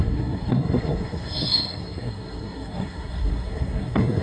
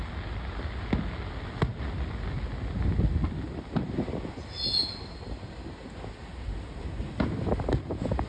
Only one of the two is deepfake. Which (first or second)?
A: first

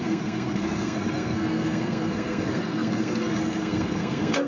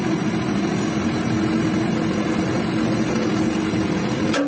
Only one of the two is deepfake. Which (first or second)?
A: first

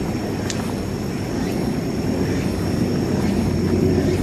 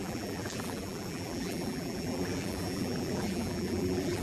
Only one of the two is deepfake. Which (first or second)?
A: second